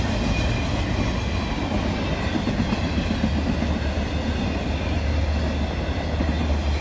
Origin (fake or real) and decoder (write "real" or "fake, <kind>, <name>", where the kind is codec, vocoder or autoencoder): real